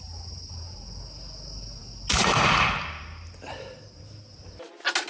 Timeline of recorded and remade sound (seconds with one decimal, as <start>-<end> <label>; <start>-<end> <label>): 0.0-5.1 recorded